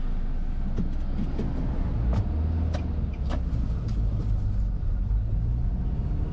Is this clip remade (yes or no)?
no